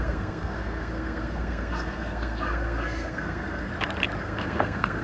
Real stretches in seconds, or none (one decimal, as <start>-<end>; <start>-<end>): 3.7-4.2